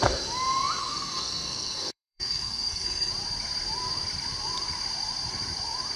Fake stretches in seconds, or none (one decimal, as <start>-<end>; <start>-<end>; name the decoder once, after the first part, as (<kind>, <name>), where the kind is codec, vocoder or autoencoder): 0.8-3.1 (codec, SNAC)